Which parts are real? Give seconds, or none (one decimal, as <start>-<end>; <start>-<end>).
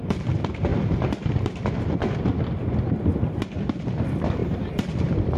0.0-0.7; 1.3-5.4